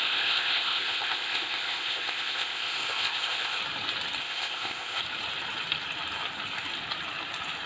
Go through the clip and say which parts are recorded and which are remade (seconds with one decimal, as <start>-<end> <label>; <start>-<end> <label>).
0.0-3.6 remade; 3.6-4.2 recorded; 4.2-5.0 remade; 5.0-7.7 recorded